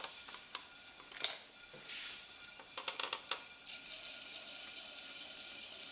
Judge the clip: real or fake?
real